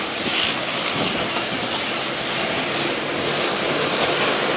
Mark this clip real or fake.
real